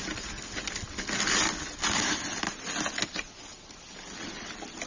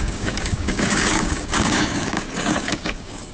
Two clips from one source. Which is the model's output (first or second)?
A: second